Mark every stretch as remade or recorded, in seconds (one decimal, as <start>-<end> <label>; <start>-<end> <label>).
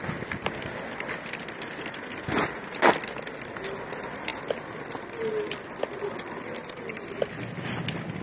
0.0-8.2 recorded